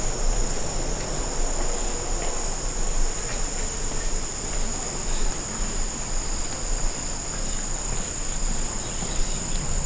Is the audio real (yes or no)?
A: yes